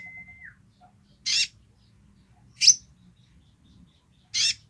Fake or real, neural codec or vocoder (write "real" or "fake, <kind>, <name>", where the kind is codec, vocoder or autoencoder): real